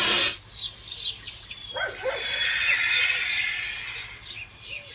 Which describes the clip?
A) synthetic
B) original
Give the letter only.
B